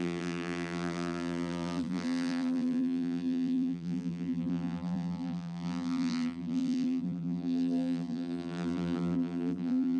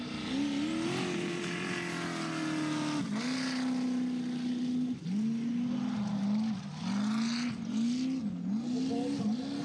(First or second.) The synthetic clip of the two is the first